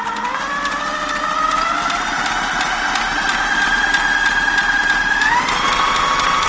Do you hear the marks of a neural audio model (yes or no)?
no